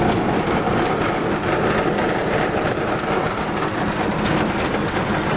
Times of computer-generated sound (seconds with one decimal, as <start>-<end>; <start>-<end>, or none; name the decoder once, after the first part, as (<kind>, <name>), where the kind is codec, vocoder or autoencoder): none